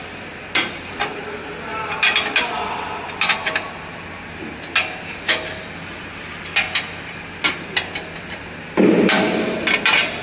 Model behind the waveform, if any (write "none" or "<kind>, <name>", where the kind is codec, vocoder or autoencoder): none